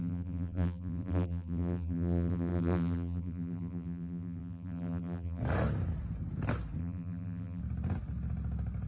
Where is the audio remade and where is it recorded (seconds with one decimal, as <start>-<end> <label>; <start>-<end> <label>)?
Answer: 0.0-5.4 remade; 5.4-6.8 recorded; 6.8-7.6 remade; 7.6-8.9 recorded